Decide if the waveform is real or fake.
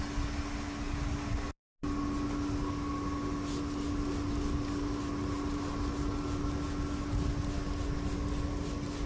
real